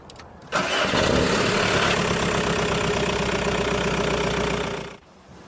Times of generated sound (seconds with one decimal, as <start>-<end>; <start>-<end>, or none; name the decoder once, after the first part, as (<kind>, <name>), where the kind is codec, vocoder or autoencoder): none